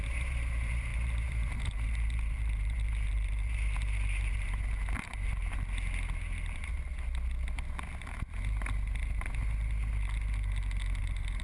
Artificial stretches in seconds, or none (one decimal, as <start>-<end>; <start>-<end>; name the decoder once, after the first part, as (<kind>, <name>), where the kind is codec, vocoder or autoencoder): 0.0-5.4 (vocoder, BigVGAN v2); 9.0-9.4; 11.0-11.4